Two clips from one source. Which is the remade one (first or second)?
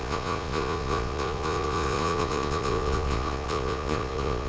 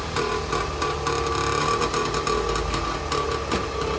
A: first